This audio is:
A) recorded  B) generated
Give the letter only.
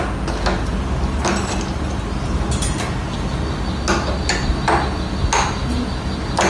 A